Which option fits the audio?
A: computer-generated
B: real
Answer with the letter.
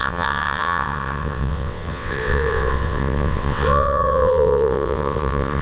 A